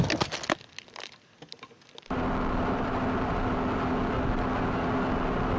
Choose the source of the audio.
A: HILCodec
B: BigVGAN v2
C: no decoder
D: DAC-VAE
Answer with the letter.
C